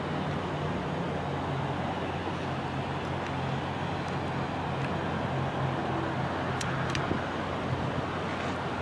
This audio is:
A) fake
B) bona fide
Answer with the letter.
B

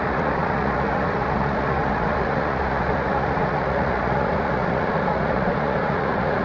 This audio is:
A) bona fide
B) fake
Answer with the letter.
B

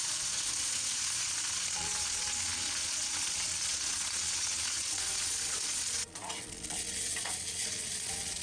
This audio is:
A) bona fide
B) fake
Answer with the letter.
B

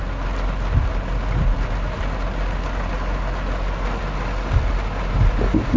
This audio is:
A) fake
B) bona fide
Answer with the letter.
B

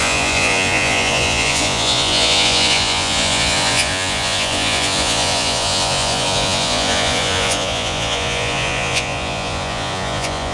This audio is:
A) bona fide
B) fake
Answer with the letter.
B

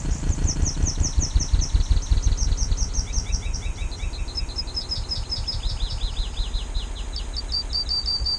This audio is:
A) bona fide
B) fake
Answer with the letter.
A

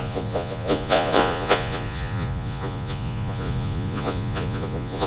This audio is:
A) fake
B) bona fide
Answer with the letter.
A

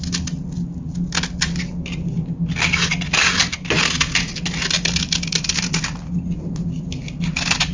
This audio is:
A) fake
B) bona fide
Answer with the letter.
B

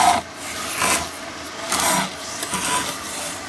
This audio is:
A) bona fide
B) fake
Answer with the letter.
A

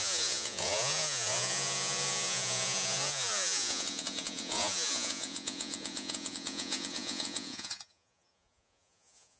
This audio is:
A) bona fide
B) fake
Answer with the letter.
B